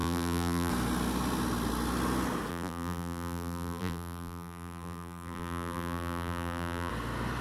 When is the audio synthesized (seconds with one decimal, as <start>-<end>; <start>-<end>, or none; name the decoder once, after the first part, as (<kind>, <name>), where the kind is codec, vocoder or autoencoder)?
0.0-0.7 (vocoder, BigVGAN v2); 2.5-6.9